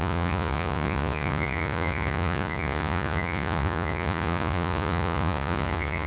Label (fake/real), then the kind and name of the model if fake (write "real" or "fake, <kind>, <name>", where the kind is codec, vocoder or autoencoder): fake, vocoder, Vocos